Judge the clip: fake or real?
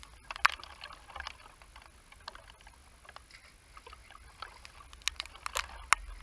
real